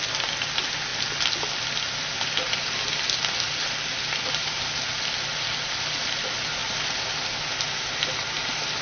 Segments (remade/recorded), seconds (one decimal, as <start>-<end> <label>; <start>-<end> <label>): 0.0-8.8 recorded